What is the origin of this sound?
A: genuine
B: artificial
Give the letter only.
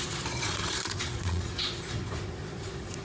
B